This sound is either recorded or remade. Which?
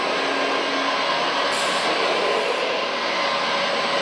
recorded